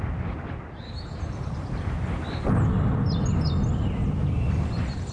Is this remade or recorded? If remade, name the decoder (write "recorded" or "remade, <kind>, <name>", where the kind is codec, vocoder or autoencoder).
recorded